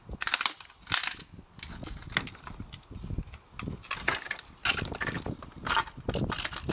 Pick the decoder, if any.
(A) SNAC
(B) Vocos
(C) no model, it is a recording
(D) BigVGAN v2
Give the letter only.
C